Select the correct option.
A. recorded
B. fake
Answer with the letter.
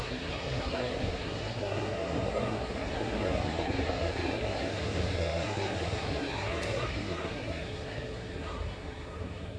B